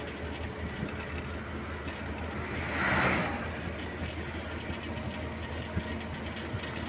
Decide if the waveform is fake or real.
real